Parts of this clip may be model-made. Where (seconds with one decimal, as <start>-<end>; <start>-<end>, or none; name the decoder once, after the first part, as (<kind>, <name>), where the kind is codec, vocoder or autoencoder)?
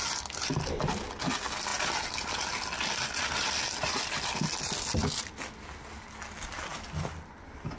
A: none